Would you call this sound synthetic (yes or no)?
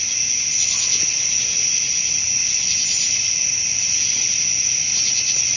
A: no